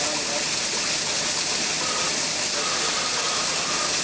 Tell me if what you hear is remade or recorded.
recorded